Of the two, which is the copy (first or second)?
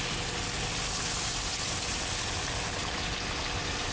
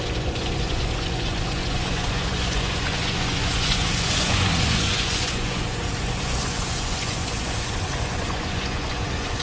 second